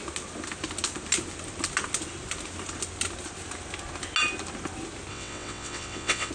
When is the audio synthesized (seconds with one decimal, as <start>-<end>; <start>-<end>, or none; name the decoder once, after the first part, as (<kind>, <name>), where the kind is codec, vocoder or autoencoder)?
5.1-6.3 (vocoder, WaveNeXt)